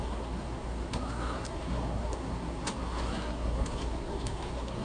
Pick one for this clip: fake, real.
fake